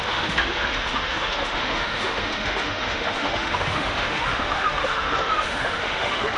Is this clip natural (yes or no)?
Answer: no